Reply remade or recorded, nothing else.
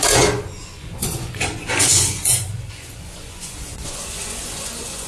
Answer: remade